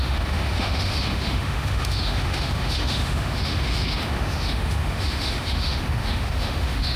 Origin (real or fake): fake